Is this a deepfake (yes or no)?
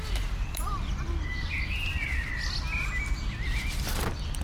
no